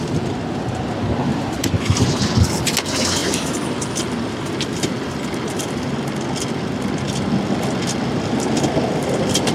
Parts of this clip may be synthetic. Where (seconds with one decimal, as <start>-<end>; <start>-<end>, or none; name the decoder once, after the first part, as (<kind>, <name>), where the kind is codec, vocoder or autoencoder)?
1.3-2.1 (vocoder, BigVGAN v2)

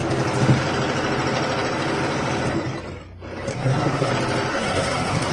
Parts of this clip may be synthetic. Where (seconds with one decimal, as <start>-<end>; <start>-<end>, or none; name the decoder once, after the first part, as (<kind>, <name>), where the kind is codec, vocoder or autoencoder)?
3.5-4.1 (codec, SNAC); 4.5-5.3

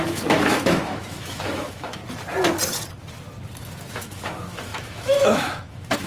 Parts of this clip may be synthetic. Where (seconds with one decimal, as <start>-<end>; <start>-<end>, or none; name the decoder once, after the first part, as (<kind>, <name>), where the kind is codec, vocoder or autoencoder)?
0.0-2.0 (autoencoder, DAC-VAE); 3.9-6.1

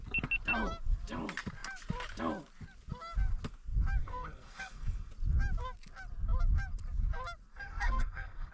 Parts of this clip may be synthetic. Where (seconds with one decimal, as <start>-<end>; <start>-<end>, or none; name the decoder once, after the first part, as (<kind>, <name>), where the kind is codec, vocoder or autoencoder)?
4.0-5.1 (codec, SNAC); 7.5-8.5

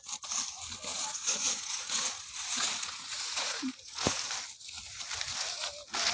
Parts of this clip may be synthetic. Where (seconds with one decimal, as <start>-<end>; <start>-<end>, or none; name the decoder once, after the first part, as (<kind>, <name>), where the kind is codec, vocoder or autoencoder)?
0.9-4.2 (vocoder, Vocos)

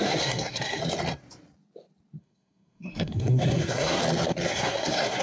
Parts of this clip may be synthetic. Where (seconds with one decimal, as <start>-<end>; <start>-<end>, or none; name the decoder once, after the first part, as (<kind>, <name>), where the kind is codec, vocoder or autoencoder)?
0.0-0.8 (codec, SNAC); 2.2-4.0; 4.5-5.2

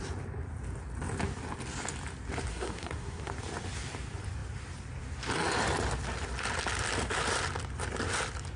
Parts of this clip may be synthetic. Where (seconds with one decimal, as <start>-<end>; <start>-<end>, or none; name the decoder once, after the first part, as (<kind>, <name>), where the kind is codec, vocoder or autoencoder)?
2.5-3.3 (codec, SNAC)